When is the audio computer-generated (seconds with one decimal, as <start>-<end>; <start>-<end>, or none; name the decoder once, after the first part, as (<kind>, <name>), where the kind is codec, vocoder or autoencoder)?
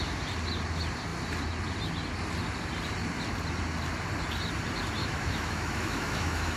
5.0-6.6 (autoencoder, DAC-VAE)